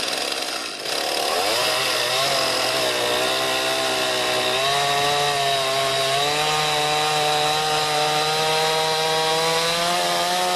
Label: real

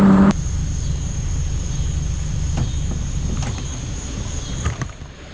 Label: fake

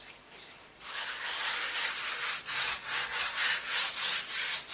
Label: real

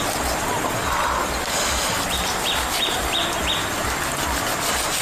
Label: real